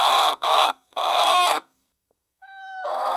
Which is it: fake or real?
fake